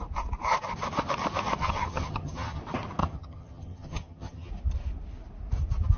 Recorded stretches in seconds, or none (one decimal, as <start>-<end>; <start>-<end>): 0.0-1.6; 2.6-3.0; 4.5-6.0